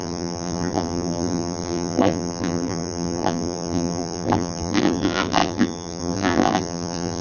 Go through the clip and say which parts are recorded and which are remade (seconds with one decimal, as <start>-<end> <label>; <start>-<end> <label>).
0.0-7.2 remade